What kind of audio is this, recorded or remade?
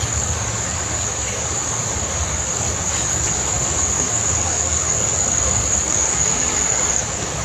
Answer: remade